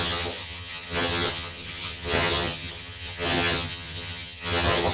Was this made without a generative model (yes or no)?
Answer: no